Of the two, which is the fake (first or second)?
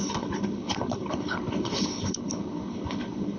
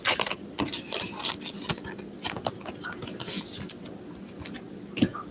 first